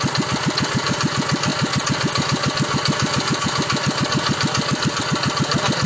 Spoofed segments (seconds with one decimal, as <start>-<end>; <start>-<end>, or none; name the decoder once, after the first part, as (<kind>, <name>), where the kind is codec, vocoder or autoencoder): none